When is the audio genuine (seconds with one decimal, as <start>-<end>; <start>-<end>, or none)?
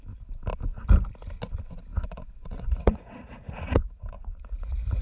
0.0-1.9